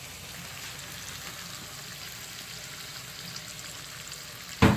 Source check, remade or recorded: recorded